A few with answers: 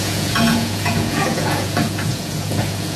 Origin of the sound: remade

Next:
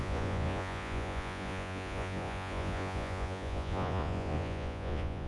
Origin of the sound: remade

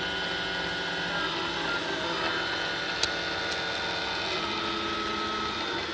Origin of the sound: recorded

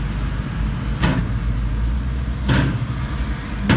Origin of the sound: recorded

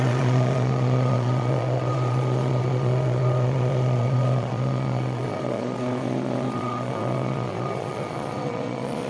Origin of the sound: remade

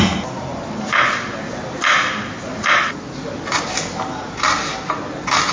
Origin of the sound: recorded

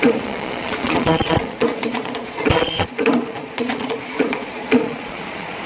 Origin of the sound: remade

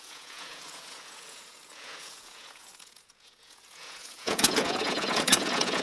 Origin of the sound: remade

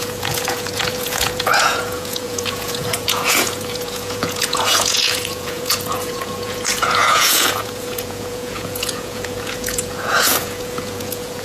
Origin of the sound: remade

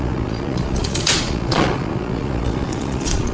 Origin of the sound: remade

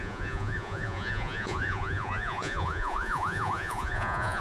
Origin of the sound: remade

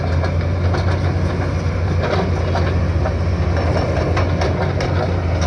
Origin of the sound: recorded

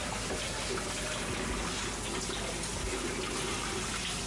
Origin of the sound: recorded